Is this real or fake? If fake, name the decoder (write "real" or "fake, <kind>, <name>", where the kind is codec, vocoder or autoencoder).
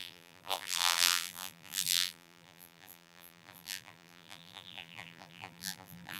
fake, vocoder, BigVGAN v2